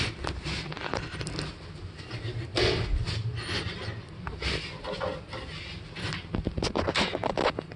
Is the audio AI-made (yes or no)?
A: no